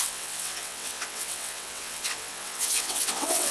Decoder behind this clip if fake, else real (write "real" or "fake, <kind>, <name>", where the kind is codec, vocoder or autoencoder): fake, vocoder, WaveNeXt